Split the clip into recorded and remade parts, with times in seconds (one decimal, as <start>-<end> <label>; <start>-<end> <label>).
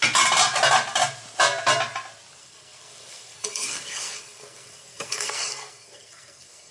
0.0-2.4 recorded; 2.4-6.7 remade